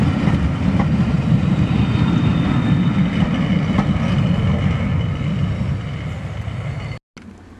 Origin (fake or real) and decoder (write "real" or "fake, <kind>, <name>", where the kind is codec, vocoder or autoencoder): real